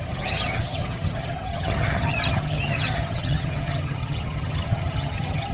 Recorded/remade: remade